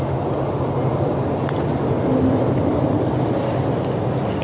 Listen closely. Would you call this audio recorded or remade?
recorded